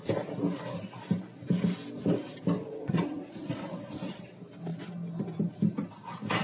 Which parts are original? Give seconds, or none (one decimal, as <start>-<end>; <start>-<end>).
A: 0.0-2.6; 4.3-6.4